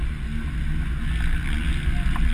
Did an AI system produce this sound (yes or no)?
no